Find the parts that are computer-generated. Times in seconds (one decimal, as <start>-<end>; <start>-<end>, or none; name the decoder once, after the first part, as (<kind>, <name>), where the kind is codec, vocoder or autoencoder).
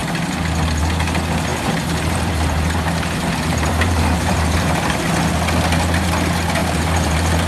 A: 1.5-5.1 (vocoder, BigVGAN v2); 6.6-7.5